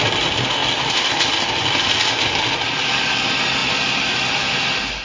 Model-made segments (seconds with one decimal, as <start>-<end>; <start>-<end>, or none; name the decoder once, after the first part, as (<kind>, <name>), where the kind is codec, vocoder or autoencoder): 0.0-0.6 (vocoder, BigVGAN v2); 2.2-5.0